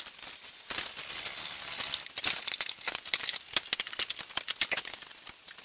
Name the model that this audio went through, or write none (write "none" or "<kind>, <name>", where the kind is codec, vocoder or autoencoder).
none